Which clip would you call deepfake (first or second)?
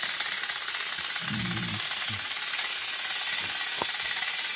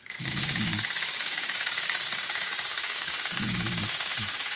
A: second